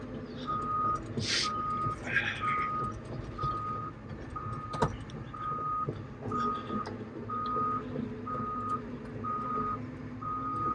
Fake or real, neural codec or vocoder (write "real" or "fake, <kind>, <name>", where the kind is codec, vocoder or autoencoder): real